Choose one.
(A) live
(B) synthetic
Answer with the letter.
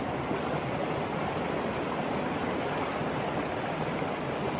A